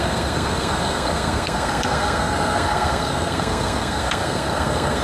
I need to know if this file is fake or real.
fake